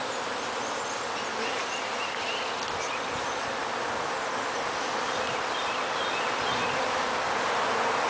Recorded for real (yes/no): yes